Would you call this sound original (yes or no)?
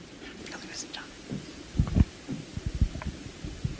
yes